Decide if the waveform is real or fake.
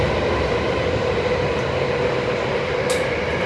real